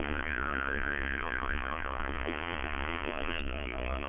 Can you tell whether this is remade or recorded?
remade